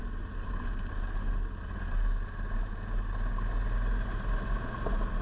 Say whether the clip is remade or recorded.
recorded